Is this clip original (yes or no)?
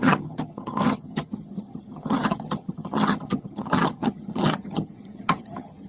no